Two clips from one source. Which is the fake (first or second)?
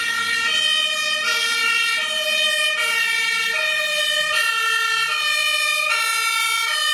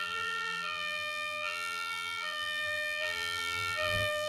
second